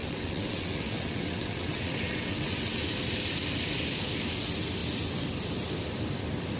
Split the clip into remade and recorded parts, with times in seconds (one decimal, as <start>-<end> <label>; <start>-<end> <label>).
0.0-2.8 remade; 2.8-6.6 recorded